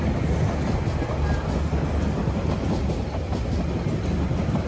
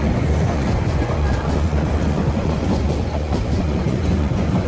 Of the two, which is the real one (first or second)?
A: first